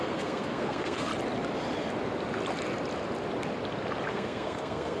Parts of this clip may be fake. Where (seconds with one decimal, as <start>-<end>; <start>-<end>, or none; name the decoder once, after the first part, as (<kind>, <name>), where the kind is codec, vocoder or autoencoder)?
0.0-1.1 (codec, SNAC); 4.1-5.0